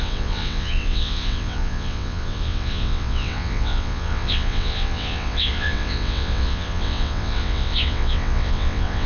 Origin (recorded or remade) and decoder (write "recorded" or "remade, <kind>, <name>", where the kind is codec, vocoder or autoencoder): remade, vocoder, WaveNeXt